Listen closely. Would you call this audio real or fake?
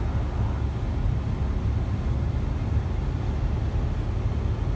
real